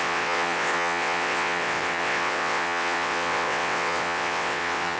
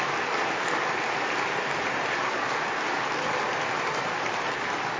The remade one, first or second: first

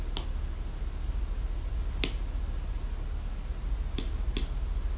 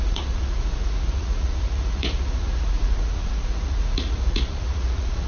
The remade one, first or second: second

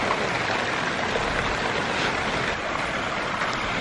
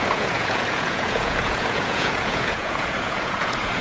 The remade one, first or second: second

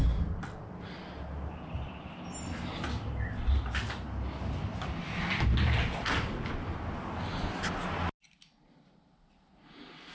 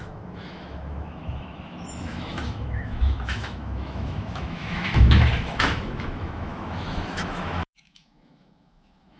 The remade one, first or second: second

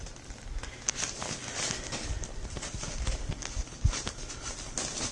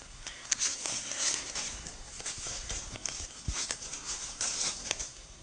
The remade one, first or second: second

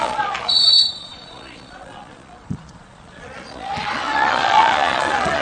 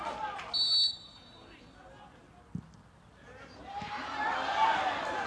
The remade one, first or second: first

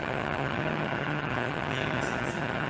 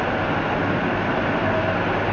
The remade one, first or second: first